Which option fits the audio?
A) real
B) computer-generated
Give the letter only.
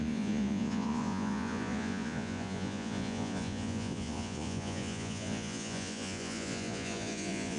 B